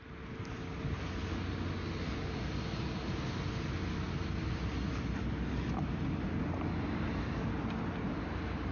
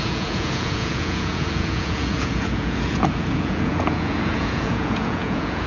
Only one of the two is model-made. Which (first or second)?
second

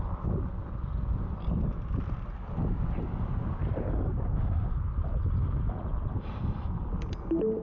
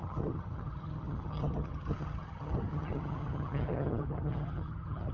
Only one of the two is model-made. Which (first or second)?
second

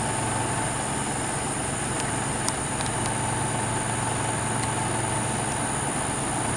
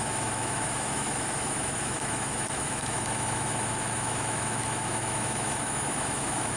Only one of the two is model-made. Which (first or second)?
second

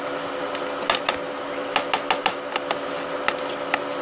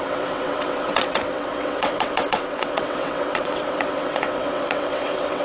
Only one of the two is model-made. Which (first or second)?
second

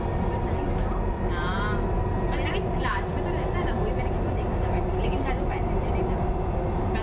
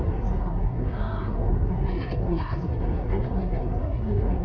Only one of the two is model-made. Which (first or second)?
second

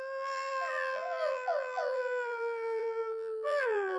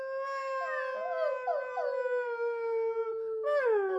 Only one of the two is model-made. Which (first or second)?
first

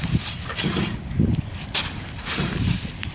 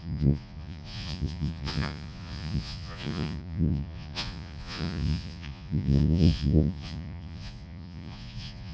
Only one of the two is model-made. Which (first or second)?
second